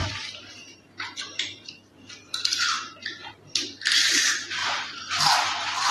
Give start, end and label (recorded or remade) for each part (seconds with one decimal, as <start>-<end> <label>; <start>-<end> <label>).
0.0-5.9 remade

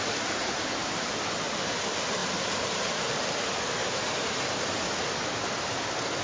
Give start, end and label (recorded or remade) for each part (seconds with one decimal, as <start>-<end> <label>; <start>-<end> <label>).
0.0-0.4 recorded; 0.4-1.1 remade; 1.1-2.2 recorded; 2.2-3.1 remade; 3.1-3.8 recorded; 3.8-4.7 remade; 4.7-6.2 recorded

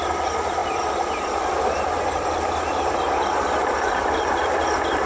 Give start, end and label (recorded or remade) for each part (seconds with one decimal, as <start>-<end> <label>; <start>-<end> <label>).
0.0-0.6 recorded; 0.6-3.7 remade; 3.7-5.1 recorded

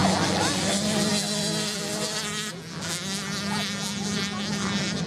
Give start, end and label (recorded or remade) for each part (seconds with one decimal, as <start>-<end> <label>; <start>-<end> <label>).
0.0-5.1 recorded

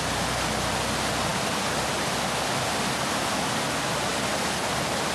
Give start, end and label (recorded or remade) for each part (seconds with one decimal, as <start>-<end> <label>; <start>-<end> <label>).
0.0-5.1 recorded

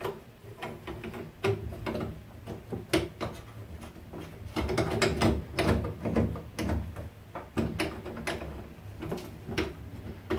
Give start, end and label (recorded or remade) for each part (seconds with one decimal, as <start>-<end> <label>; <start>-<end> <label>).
0.0-0.4 recorded; 0.4-1.2 remade; 1.2-10.4 recorded